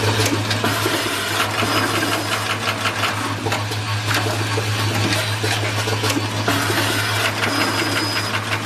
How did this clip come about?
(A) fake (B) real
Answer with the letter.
B